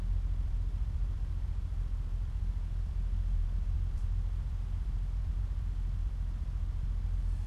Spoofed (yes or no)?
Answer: yes